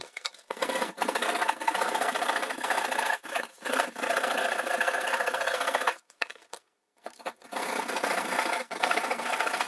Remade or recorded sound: remade